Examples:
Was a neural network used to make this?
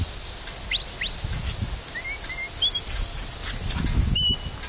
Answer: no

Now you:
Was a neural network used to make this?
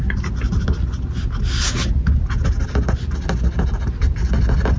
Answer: no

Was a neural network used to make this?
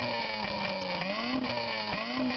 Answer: no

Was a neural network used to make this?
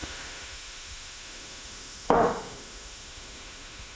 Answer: yes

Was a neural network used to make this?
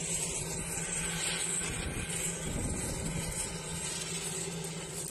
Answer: no